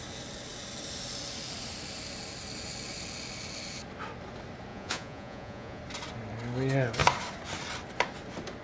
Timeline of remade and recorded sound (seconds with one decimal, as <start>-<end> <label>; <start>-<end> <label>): 0.0-4.7 recorded; 4.7-5.8 remade; 5.8-8.6 recorded